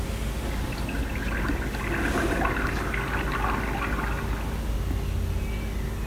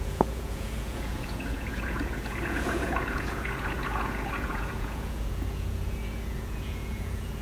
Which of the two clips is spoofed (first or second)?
second